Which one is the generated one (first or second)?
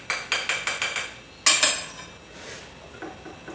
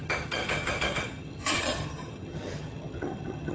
second